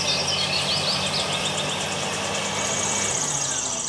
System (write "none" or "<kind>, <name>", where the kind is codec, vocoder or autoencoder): none